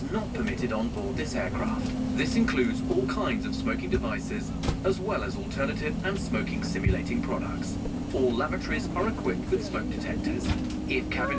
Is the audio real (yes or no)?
yes